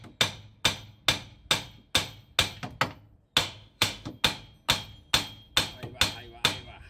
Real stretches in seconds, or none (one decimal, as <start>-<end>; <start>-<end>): 0.0-3.4; 4.1-6.9